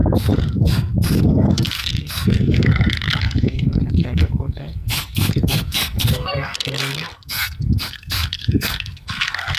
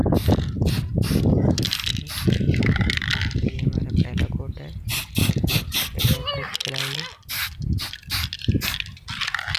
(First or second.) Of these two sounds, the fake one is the first